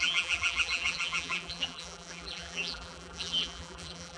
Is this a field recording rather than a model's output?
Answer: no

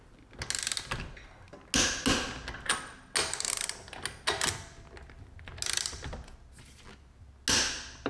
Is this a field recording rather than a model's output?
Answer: yes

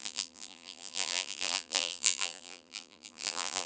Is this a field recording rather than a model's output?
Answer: no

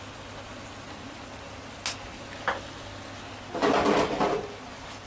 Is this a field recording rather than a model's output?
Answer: yes